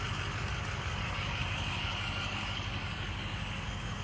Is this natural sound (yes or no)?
no